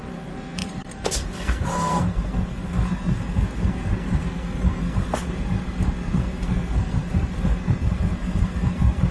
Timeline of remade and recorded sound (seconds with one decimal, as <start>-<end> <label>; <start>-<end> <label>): 0.0-9.1 remade